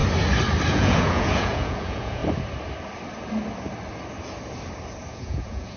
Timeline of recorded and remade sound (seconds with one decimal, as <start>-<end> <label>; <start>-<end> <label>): 0.0-0.7 recorded; 0.7-2.2 remade; 2.2-5.1 recorded; 5.1-5.8 remade